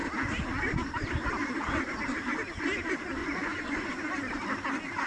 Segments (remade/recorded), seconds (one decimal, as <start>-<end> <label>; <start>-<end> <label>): 0.0-3.2 recorded; 3.2-3.9 remade; 3.9-5.1 recorded